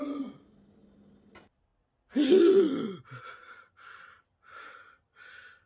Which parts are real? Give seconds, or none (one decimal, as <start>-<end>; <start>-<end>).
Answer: 0.0-5.7